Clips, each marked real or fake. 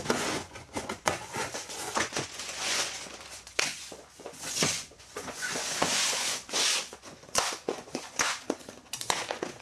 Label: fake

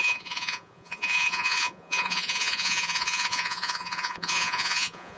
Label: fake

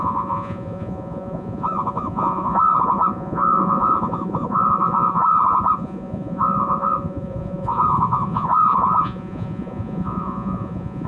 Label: fake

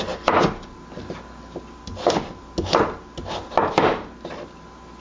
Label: real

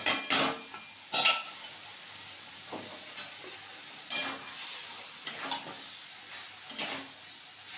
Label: real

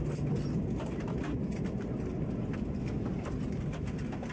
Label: real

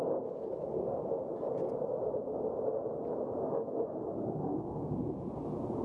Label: real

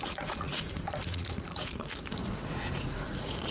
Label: fake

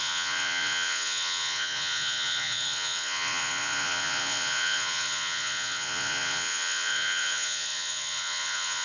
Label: fake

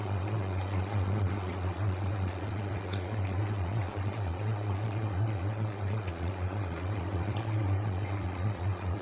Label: fake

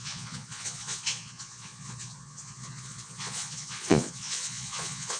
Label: fake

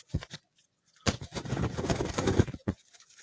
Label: fake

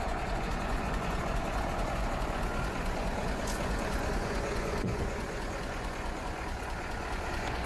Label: fake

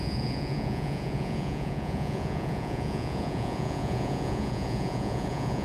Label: fake